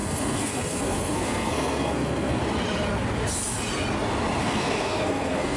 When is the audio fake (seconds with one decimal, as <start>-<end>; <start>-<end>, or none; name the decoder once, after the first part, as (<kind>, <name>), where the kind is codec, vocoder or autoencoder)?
0.0-2.4 (codec, SNAC); 4.4-5.6